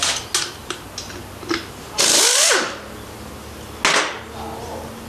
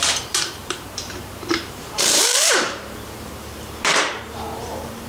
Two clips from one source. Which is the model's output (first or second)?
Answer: second